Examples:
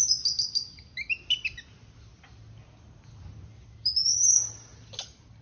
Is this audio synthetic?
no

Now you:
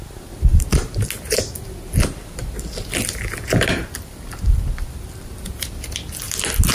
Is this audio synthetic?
no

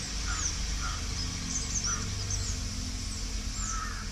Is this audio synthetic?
no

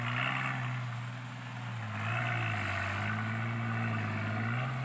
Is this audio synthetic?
no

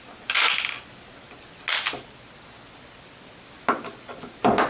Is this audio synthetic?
no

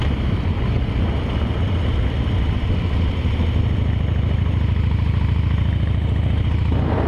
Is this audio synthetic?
no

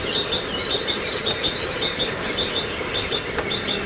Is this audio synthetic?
no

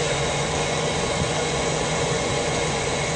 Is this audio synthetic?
yes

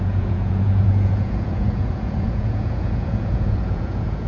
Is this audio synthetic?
yes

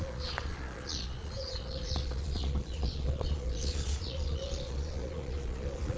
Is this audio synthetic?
yes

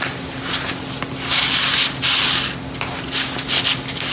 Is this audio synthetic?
no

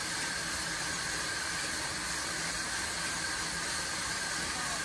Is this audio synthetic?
no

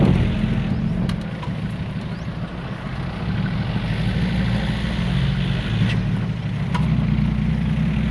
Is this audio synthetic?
no